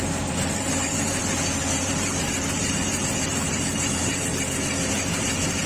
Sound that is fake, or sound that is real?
fake